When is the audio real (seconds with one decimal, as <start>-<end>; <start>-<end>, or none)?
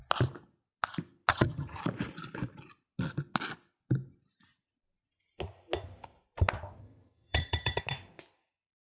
0.0-1.3; 1.8-6.8; 7.8-8.9